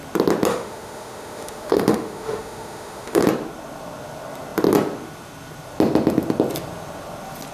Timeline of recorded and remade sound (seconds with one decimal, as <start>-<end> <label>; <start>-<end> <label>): 0.0-0.5 recorded; 0.5-3.2 remade; 3.2-7.5 recorded